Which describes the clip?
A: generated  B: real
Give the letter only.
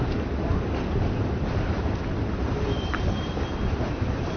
A